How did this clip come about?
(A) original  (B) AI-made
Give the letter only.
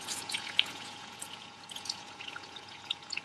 B